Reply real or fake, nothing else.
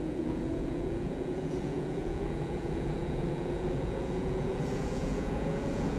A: fake